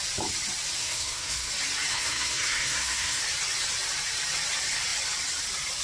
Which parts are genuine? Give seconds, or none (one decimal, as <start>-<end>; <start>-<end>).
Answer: 0.0-0.8; 1.5-1.9; 3.2-5.8